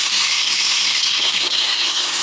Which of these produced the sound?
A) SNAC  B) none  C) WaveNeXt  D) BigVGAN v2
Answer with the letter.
A